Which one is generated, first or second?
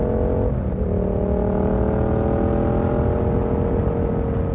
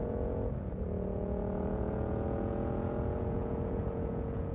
second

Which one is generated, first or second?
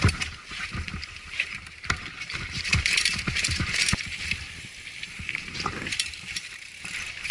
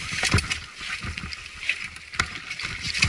first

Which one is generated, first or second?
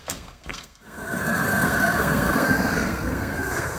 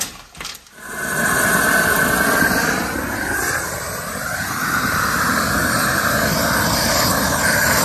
first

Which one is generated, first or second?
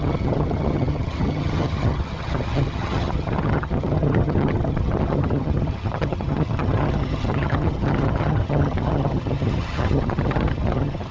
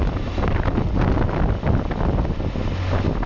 first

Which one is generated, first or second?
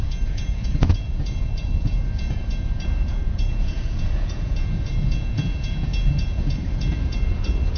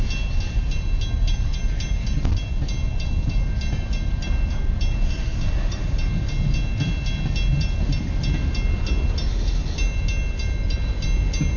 first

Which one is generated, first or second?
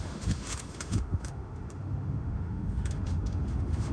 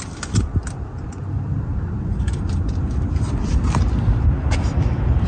first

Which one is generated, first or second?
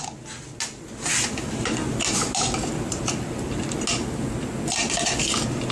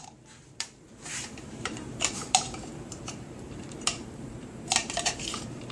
second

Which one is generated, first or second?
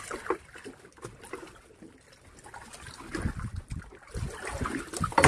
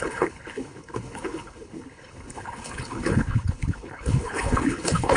second